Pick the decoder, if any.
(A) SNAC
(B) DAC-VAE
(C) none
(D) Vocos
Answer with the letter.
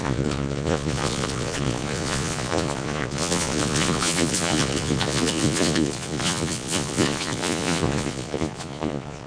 D